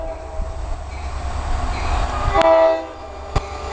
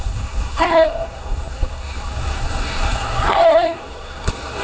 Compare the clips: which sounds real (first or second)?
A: first